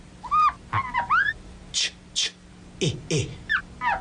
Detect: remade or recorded recorded